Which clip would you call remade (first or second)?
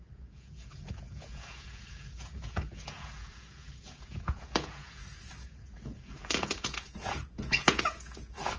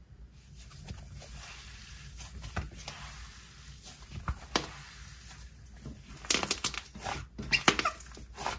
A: first